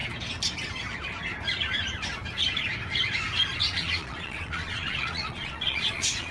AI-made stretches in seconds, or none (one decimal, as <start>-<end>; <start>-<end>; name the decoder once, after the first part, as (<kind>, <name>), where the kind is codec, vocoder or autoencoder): 3.6-6.3 (vocoder, Vocos)